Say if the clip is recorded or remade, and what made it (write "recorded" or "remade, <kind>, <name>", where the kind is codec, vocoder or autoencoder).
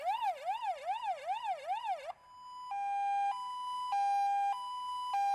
recorded